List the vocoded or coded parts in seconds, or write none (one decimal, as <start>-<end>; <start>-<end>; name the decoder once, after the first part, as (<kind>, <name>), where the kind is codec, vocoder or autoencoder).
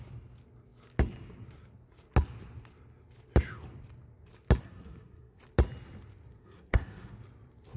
4.6-5.4 (codec, SNAC); 6.4-7.1